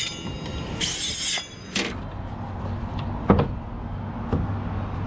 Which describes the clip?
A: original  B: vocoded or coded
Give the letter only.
A